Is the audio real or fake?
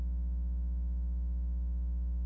real